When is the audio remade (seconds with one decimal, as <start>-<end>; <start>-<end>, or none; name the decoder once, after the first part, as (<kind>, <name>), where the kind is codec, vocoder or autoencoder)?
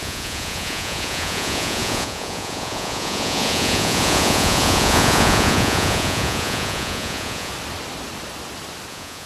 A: 0.0-7.5 (vocoder, Vocos); 8.9-9.3